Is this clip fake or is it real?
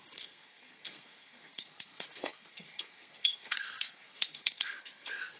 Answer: fake